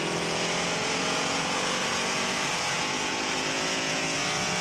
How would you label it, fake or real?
fake